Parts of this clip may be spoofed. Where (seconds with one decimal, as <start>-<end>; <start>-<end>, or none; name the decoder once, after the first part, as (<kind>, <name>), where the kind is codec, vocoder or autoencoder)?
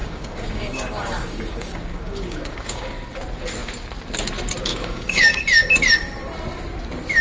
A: 0.0-3.2 (codec, DAC); 4.7-5.4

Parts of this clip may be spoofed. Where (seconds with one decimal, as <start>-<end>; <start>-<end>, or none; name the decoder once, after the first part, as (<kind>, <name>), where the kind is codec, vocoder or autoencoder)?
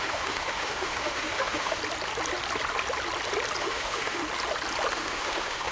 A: 0.0-1.8 (autoencoder, DAC-VAE); 3.6-4.2; 4.9-5.7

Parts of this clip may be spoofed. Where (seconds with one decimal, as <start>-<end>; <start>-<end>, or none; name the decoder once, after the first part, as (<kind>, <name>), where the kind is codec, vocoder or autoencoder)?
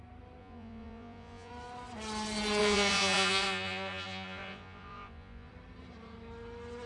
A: 0.4-1.5 (vocoder, Vocos); 2.6-5.5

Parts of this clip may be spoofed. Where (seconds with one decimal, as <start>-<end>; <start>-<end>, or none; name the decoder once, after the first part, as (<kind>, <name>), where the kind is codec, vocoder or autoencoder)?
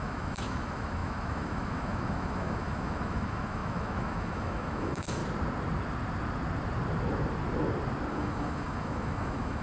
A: 0.0-5.2 (autoencoder, DAC-VAE); 8.1-9.6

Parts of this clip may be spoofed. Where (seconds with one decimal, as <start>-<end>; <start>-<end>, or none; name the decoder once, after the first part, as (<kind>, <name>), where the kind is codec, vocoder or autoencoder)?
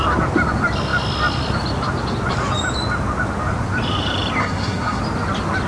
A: 4.4-5.0 (codec, SNAC)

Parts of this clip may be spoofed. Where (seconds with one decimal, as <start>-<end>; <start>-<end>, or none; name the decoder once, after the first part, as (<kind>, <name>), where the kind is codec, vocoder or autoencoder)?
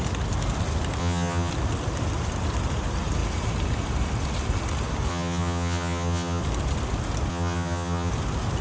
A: 1.0-1.5 (vocoder, HiFi-GAN); 5.1-6.4; 7.3-8.1